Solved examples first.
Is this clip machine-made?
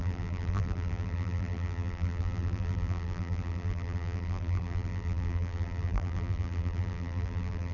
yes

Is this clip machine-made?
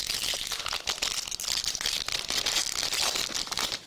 no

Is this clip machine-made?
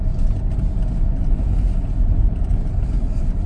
no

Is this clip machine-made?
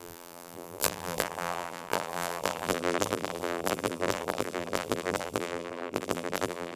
yes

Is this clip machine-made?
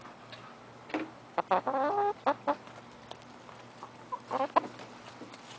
no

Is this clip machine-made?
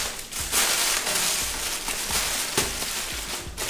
no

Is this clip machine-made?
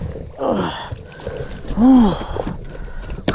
no